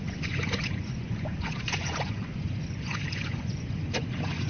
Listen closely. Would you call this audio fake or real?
fake